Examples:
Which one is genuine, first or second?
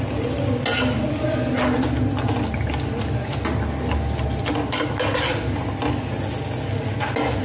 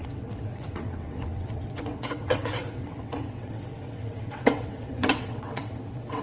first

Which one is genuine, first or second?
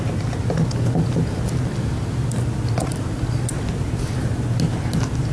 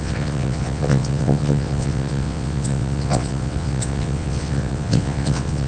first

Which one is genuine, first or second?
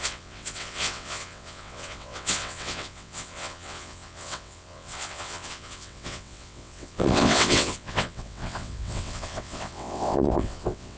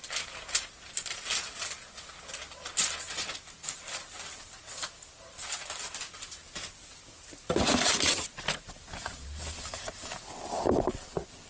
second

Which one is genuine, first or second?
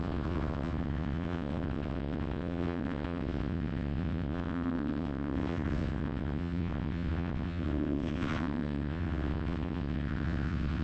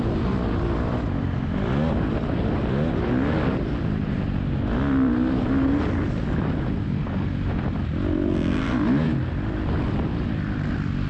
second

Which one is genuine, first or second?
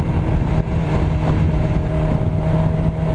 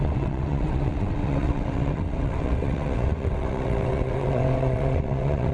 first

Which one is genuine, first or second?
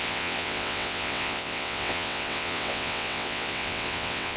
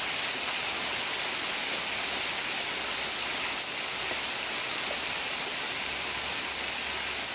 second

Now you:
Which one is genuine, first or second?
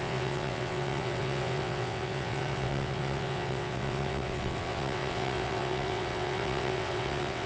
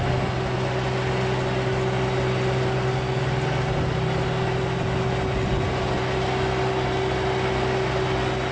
second